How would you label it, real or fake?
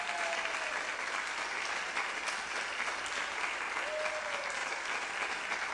real